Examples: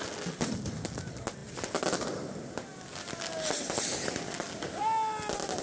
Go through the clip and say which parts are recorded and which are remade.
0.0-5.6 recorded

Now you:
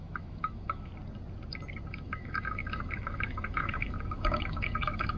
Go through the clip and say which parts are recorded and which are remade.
0.0-0.9 remade; 0.9-1.9 recorded; 1.9-5.2 remade

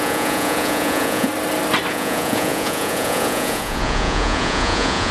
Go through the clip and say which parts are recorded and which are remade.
0.0-1.3 remade; 1.3-1.9 recorded; 1.9-5.1 remade

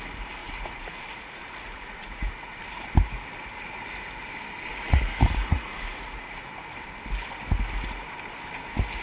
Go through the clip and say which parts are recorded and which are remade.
0.0-0.4 recorded; 0.4-2.6 remade; 2.6-4.7 recorded; 4.7-6.5 remade; 6.5-9.0 recorded